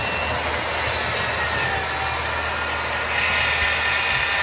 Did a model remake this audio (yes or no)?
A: no